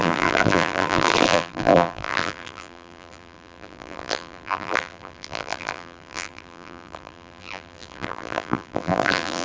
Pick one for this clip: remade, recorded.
remade